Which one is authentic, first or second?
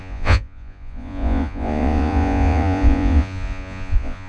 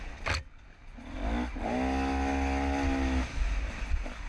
second